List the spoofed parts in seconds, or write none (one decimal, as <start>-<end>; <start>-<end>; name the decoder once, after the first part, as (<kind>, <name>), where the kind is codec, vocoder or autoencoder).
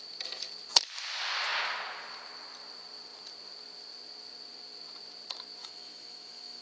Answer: 5.6-6.6 (autoencoder, DAC-VAE)